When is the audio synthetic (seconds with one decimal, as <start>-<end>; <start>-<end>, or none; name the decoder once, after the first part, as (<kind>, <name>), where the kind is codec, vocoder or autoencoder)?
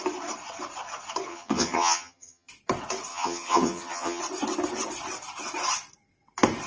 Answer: 1.3-2.5 (vocoder, HiFi-GAN); 3.1-4.2